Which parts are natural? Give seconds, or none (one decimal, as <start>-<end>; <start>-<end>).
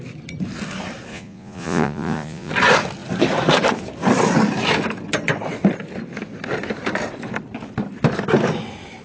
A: 0.0-1.1; 2.5-9.0